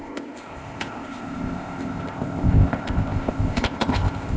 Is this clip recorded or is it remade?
remade